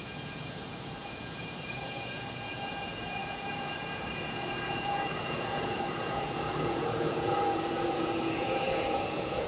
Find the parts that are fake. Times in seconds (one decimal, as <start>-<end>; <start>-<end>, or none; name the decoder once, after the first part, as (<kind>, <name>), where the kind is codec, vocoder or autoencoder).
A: 0.0-9.5 (vocoder, Vocos)